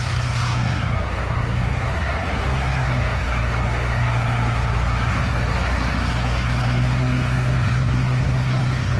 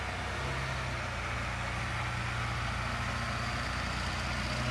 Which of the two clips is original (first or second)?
second